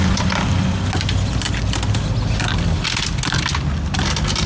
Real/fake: real